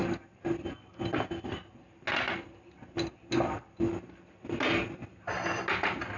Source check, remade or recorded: recorded